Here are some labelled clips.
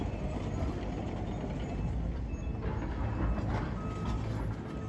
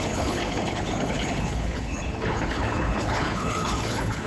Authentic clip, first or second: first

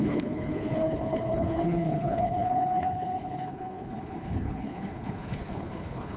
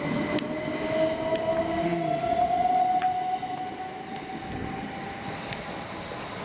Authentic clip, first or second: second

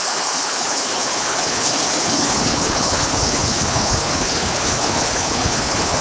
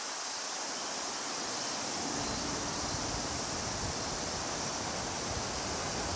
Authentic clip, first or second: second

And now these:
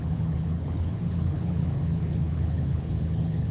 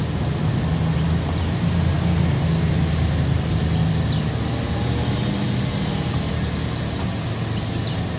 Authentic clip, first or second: second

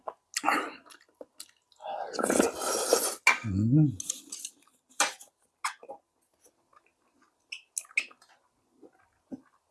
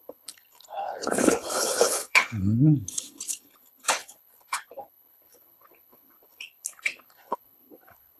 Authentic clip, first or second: first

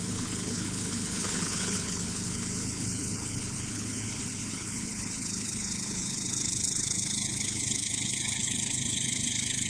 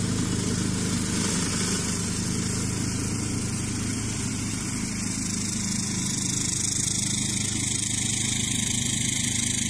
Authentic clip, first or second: second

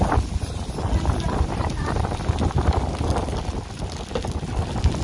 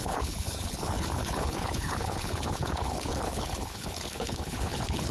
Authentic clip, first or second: first